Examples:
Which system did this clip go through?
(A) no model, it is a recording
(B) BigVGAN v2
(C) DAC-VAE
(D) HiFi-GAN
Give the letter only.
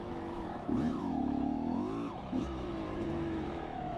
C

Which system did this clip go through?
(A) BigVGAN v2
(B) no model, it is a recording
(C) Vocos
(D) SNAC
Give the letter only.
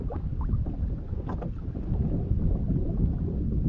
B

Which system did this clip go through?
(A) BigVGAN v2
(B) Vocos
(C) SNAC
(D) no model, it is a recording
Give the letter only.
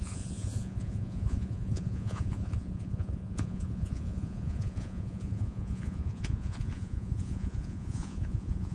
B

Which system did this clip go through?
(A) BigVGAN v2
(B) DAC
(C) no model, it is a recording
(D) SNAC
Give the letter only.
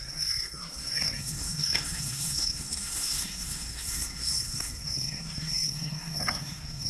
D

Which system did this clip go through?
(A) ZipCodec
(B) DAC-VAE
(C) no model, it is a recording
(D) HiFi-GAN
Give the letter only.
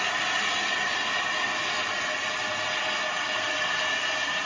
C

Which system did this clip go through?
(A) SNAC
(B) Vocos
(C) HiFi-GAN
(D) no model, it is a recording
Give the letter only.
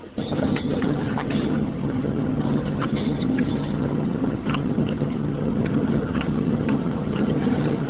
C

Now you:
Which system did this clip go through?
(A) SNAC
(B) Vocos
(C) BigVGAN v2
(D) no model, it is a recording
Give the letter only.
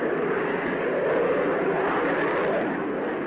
D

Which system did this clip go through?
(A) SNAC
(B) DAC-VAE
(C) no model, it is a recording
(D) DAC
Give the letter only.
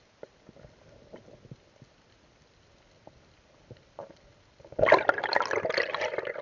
C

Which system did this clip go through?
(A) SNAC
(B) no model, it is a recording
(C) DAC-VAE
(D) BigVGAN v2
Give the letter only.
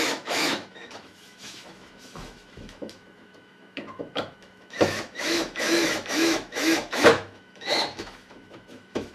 C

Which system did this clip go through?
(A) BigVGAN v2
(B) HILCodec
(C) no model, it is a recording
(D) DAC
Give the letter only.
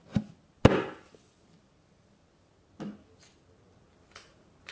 C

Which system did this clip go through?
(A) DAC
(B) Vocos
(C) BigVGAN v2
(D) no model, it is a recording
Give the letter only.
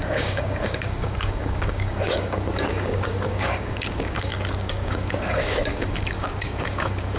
A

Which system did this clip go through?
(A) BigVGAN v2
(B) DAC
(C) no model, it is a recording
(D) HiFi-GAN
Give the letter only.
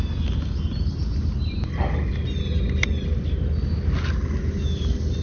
C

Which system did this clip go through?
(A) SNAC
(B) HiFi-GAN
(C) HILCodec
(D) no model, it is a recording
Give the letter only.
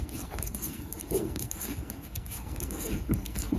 A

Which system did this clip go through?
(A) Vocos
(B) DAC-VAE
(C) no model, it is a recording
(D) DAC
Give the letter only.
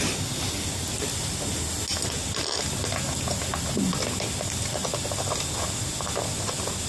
C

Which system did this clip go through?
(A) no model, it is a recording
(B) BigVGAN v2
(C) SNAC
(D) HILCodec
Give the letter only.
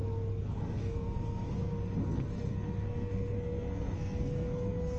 C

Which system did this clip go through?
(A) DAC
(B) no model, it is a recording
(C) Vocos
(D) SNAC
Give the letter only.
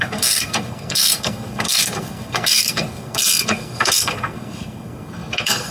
D